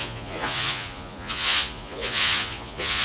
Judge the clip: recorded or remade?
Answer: remade